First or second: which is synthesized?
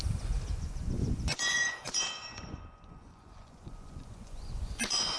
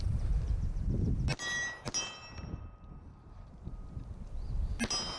first